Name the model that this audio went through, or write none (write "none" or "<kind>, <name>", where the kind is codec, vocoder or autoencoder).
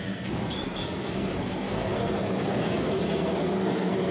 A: codec, SNAC